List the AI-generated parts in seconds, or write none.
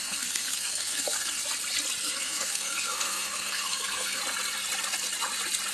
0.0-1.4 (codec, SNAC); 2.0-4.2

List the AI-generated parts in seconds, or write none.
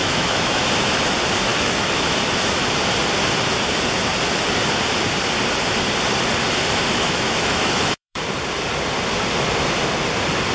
0.0-0.9 (autoencoder, DAC-VAE); 1.5-2.2; 6.9-8.2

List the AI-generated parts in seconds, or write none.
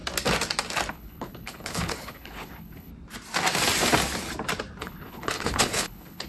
0.9-2.9 (codec, HILCodec); 4.8-6.3